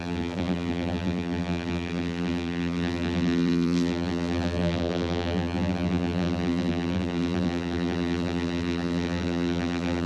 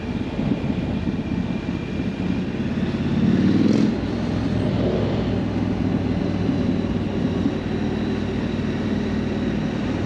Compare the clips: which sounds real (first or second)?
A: second